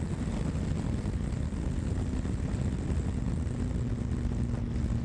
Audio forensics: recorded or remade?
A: recorded